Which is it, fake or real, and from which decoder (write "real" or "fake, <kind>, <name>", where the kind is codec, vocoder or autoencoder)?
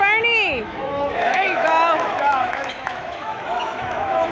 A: fake, autoencoder, DAC-VAE